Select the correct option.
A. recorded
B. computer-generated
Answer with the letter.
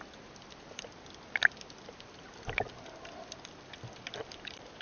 A